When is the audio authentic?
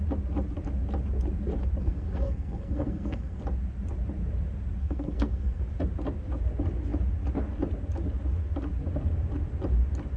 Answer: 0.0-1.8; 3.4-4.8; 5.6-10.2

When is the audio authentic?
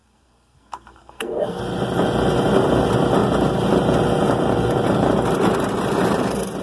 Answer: 1.6-6.6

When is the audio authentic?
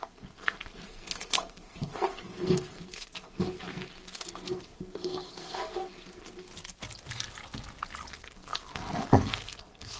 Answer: 6.5-8.1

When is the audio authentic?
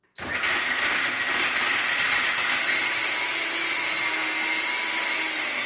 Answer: 0.0-5.7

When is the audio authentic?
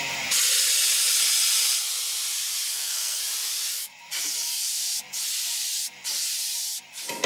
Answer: 0.0-2.7; 3.2-7.3